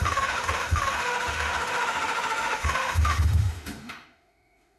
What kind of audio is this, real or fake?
fake